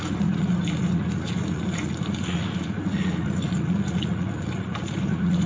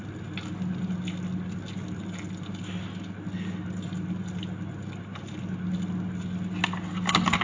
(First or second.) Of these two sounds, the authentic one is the second